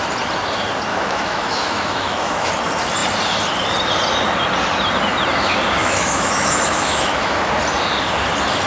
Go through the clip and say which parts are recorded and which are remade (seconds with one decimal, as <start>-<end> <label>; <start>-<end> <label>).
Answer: 0.0-0.9 recorded; 0.9-2.5 remade; 2.5-5.8 recorded; 5.8-7.5 remade; 7.5-8.7 recorded